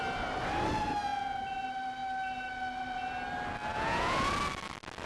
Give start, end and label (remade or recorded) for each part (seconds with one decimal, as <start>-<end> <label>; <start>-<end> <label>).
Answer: 0.0-3.7 recorded; 3.7-4.3 remade; 4.3-5.1 recorded